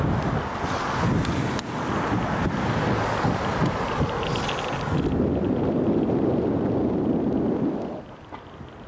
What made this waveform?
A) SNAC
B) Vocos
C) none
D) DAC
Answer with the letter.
C